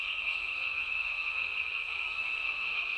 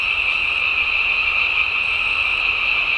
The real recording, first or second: second